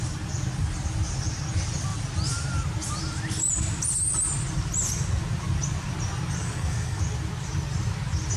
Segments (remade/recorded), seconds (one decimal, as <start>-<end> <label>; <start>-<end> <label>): 0.0-6.4 recorded; 6.4-7.0 remade; 7.0-8.4 recorded